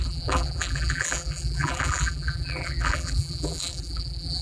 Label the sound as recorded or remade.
remade